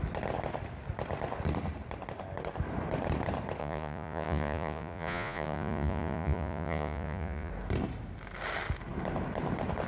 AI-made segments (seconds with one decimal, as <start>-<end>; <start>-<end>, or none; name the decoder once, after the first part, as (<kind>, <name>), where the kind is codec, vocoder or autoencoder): 3.6-7.5 (vocoder, Vocos)